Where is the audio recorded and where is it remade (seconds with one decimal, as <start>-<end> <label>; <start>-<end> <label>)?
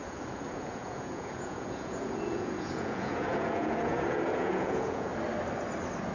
0.0-5.1 remade; 5.1-6.1 recorded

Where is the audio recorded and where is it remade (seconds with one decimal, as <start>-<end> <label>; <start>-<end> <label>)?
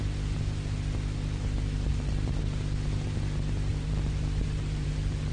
0.0-1.9 recorded; 1.9-2.4 remade; 2.4-3.7 recorded; 3.7-5.3 remade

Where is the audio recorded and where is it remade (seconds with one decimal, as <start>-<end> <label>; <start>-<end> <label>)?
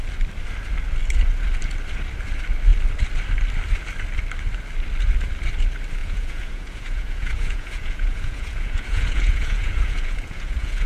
0.0-6.0 recorded; 6.0-10.9 remade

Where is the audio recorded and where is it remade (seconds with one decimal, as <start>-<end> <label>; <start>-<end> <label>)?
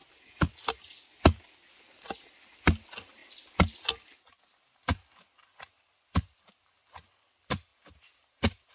0.0-8.7 recorded